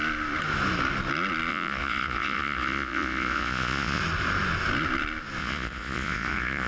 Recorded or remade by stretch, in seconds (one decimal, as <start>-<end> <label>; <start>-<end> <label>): 0.0-1.5 recorded; 1.5-4.0 remade; 4.0-5.4 recorded; 5.4-6.7 remade